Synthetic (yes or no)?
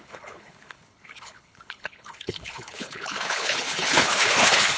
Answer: yes